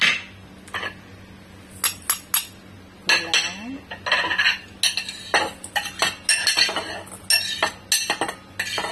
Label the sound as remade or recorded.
recorded